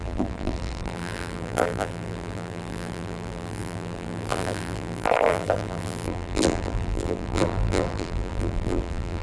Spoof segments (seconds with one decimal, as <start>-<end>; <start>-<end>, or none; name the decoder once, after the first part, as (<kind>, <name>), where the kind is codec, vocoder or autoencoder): 0.0-9.2 (vocoder, BigVGAN v2)